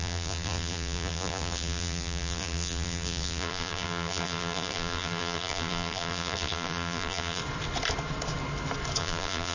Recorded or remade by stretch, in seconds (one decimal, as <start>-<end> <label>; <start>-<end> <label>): 0.0-7.4 remade; 7.4-9.0 recorded; 9.0-9.5 remade